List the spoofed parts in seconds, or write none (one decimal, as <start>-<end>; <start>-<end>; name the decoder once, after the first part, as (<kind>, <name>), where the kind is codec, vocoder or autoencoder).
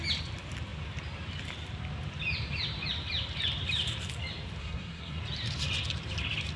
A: 4.6-5.2 (codec, SNAC)